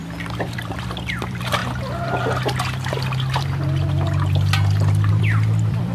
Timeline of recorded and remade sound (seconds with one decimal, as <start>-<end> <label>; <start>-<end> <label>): 0.0-1.6 remade; 1.6-5.1 recorded; 5.1-5.9 remade